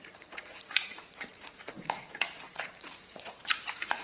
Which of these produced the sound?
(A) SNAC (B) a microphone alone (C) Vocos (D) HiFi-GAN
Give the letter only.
C